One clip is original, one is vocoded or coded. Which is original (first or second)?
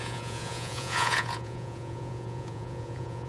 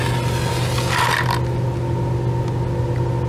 second